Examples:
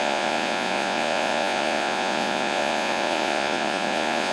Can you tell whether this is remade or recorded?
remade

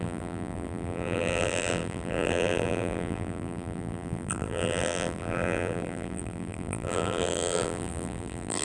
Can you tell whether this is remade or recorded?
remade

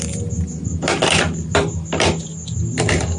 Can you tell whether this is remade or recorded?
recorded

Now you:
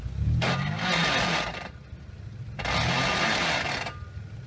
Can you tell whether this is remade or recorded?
recorded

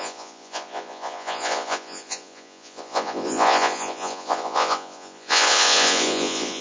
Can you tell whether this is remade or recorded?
remade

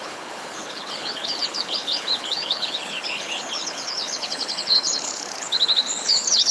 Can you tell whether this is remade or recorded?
remade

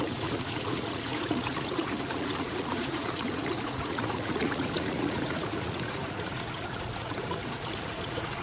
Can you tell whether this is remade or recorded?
remade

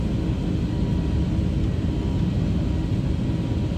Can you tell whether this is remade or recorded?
recorded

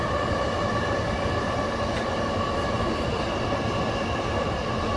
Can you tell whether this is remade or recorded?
recorded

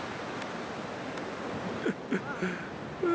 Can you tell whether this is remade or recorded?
recorded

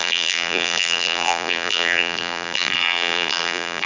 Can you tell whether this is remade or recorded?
remade